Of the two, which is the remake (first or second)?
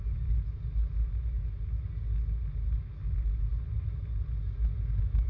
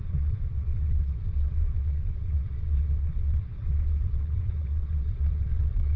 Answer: second